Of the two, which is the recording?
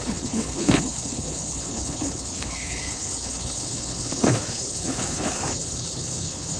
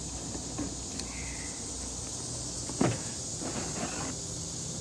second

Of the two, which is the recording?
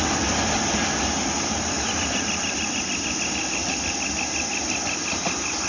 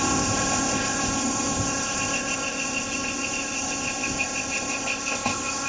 first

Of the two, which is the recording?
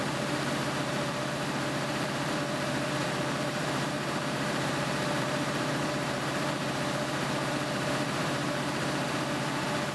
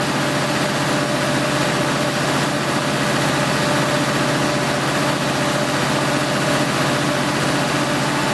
second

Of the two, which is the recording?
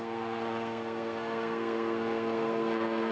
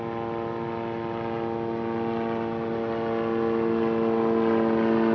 second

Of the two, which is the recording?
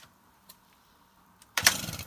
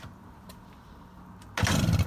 second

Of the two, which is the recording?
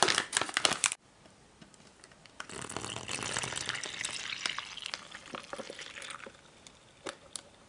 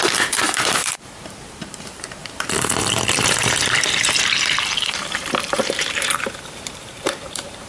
first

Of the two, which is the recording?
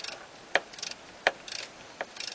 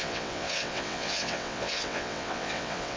first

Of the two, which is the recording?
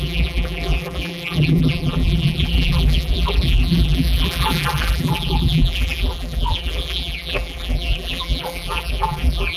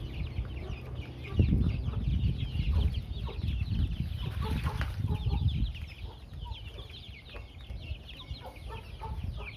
second